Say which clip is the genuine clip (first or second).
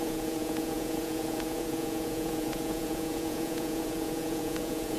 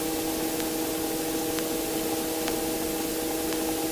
second